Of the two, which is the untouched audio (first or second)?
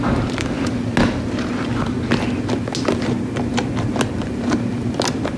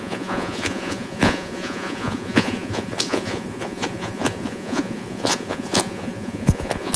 first